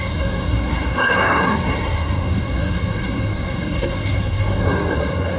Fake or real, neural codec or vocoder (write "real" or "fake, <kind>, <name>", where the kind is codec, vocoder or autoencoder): fake, codec, SNAC